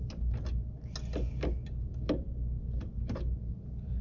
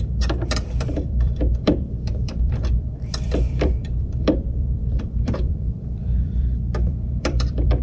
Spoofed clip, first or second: second